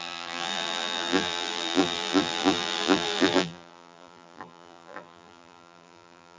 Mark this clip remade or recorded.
remade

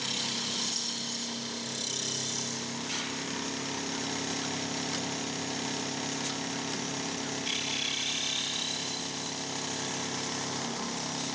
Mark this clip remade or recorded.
recorded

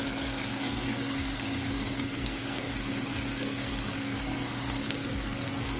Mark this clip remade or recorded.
remade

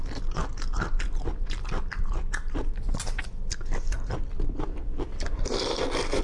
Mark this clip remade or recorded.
remade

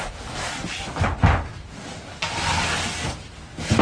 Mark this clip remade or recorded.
recorded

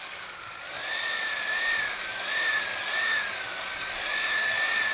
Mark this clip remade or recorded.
recorded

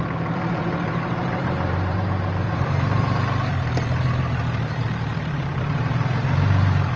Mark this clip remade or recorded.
remade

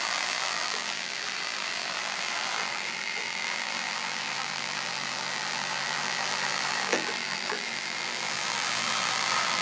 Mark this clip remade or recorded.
remade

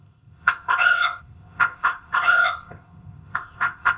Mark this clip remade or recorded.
remade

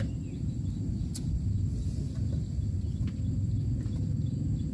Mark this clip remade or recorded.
recorded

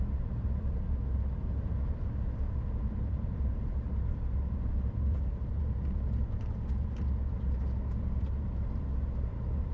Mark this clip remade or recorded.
remade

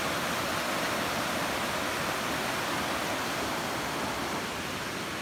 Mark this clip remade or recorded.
recorded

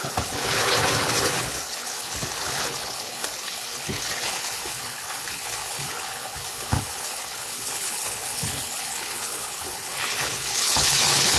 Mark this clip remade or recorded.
remade